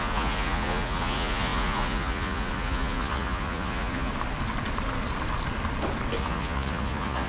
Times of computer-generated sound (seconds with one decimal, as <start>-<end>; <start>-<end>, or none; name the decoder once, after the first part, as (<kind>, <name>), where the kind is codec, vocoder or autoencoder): 0.0-4.1 (vocoder, Vocos); 6.2-7.3